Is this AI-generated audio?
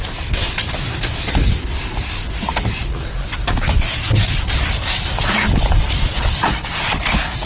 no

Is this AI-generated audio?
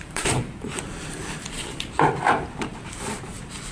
yes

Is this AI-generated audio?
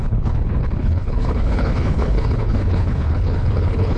yes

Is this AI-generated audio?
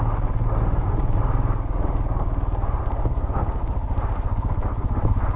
no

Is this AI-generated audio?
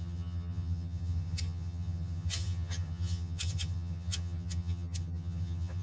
yes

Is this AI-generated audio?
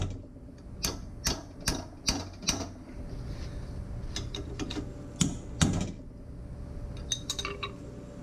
no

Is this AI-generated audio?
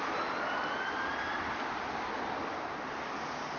no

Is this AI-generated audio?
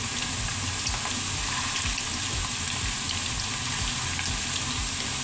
no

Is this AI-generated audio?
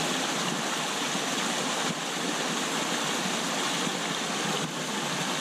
no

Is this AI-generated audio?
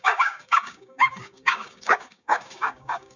yes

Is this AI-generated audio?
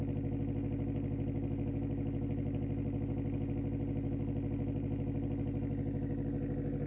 no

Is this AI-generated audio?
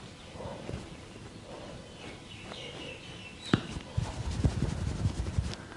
no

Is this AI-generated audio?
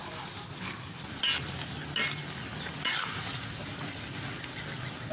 no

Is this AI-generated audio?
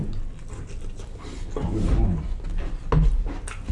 no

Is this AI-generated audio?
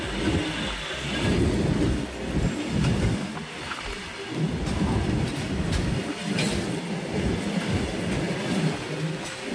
no